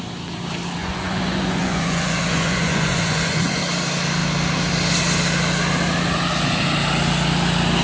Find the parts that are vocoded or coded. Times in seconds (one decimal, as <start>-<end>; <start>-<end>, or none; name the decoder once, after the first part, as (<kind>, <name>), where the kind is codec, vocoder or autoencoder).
0.8-3.6 (vocoder, Vocos)

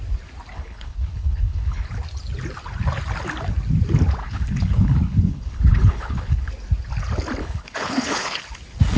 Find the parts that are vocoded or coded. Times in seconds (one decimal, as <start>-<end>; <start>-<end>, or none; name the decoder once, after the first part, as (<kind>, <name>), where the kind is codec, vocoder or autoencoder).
0.5-1.9 (codec, HILCodec); 4.2-6.5; 7.4-8.4

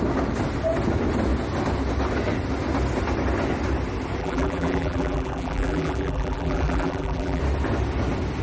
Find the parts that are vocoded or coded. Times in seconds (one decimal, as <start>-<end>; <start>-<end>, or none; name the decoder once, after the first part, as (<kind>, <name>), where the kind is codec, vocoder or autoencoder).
4.2-7.4 (vocoder, BigVGAN v2)